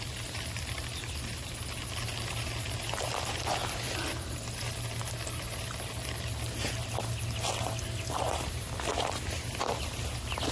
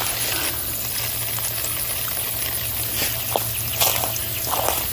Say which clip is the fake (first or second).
first